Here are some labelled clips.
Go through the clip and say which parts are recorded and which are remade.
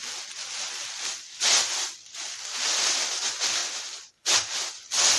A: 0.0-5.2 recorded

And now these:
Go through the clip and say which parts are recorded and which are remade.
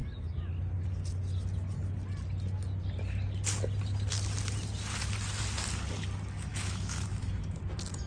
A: 0.0-6.5 recorded; 6.5-7.6 remade; 7.6-8.1 recorded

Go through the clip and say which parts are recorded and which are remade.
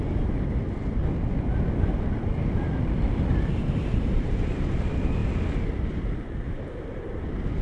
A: 0.0-7.6 recorded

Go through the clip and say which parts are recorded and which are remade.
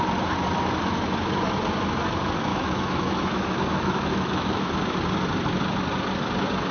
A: 0.0-2.5 recorded; 2.5-4.7 remade; 4.7-6.7 recorded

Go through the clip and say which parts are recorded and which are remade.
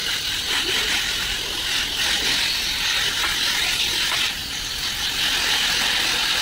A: 0.0-6.4 recorded